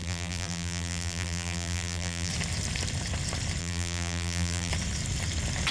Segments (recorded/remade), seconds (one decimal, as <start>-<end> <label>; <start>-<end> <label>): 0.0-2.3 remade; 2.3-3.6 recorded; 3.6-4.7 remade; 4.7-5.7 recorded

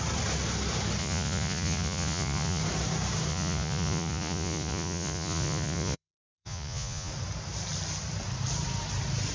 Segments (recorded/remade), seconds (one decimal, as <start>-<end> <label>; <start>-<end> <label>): 0.0-1.0 recorded; 1.0-2.6 remade; 2.6-3.3 recorded; 3.3-7.1 remade; 7.1-9.3 recorded

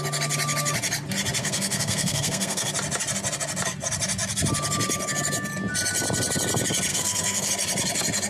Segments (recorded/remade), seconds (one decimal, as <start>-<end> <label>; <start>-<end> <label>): 0.0-1.4 recorded; 1.4-2.7 remade; 2.7-6.9 recorded; 6.9-7.5 remade; 7.5-8.3 recorded

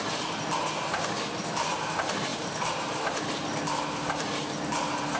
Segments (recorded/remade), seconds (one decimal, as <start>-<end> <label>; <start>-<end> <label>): 0.0-2.3 recorded; 2.3-3.2 remade; 3.2-5.2 recorded

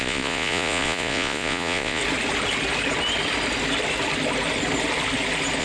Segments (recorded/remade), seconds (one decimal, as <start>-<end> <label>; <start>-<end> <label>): 0.0-2.0 remade; 2.0-5.6 recorded